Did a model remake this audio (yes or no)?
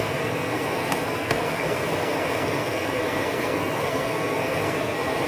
yes